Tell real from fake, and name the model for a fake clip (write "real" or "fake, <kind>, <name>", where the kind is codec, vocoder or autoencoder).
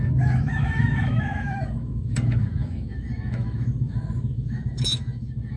fake, autoencoder, DAC-VAE